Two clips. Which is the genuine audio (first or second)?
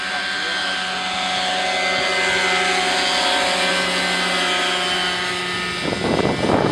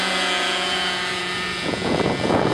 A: first